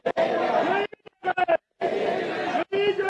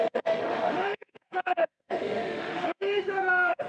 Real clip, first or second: first